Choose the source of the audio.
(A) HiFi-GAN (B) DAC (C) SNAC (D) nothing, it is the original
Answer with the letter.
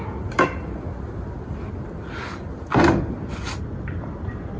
D